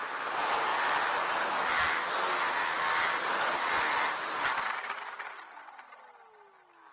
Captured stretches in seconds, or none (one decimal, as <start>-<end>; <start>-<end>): 0.0-6.9